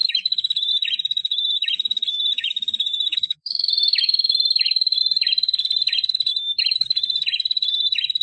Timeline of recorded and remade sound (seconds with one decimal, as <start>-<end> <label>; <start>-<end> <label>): 0.0-0.7 remade; 0.7-1.2 recorded; 1.2-5.0 remade; 5.0-6.3 recorded; 6.3-6.9 remade; 6.9-8.2 recorded

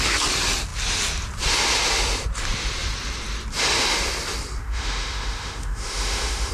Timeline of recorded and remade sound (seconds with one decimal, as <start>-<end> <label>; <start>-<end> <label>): 0.0-4.6 recorded; 4.6-6.5 remade

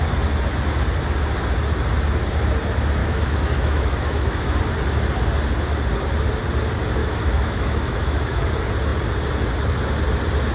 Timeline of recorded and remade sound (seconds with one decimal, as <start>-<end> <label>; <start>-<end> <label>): 0.0-3.0 recorded; 3.0-4.6 remade; 4.6-7.0 recorded; 7.0-8.5 remade; 8.5-10.5 recorded

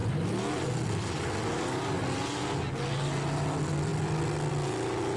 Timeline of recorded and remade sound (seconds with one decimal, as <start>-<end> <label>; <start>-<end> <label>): 0.0-5.2 recorded